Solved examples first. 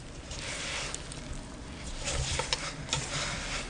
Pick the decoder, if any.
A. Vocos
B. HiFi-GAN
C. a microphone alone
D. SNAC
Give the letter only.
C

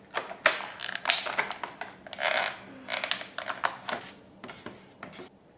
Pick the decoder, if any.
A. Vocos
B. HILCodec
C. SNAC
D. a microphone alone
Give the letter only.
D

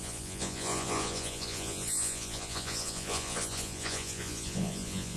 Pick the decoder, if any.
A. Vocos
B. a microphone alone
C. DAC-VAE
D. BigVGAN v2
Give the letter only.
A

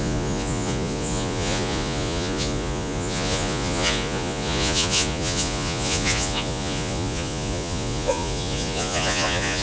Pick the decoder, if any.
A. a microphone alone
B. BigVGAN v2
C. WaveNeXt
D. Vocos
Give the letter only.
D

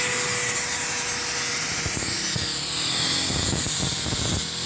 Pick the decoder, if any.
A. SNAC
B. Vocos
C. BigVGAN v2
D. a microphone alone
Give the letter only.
D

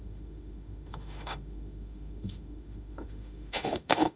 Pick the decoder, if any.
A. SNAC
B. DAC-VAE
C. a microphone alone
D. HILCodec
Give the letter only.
B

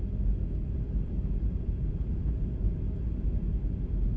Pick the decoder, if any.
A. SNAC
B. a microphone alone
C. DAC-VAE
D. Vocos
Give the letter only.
B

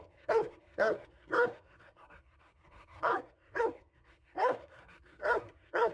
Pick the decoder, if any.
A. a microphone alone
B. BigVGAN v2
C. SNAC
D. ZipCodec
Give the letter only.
C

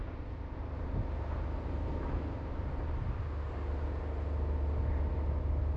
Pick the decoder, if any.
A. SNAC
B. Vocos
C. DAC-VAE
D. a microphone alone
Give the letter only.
D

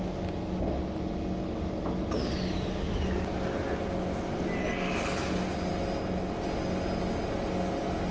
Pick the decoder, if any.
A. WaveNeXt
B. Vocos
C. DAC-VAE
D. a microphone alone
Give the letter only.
D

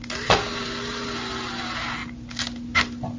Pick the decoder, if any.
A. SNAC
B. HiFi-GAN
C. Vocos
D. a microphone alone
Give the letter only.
D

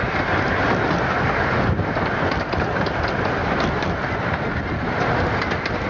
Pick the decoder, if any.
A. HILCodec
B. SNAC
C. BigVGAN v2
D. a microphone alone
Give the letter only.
D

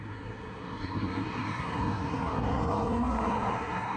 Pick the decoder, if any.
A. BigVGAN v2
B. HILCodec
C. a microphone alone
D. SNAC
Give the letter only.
D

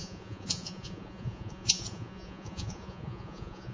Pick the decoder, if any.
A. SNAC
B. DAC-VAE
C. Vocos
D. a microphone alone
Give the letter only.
C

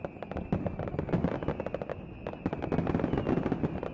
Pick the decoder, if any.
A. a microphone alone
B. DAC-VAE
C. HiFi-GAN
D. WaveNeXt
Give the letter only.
A